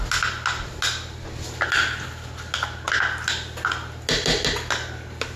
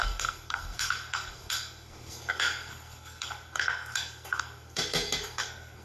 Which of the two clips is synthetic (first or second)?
second